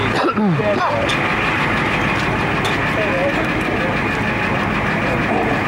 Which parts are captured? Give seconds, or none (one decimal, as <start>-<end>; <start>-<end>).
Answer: 0.0-5.7